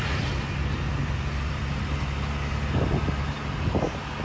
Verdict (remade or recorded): recorded